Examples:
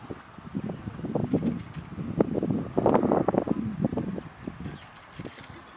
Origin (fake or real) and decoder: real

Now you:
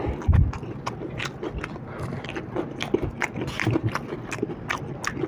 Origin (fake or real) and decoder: real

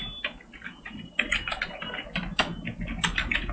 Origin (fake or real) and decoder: real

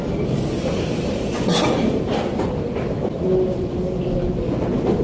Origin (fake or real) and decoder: real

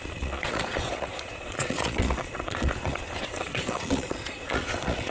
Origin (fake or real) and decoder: fake, vocoder, Vocos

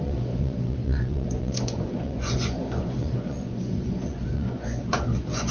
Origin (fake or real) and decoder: fake, vocoder, Vocos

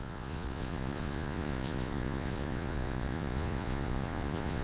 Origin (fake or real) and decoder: fake, vocoder, Vocos